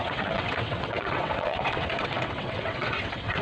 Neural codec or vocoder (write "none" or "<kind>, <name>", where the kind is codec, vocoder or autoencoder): vocoder, WaveNeXt